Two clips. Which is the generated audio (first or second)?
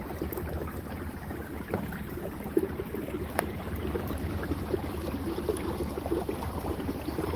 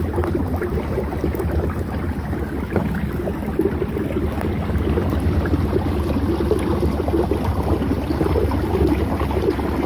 first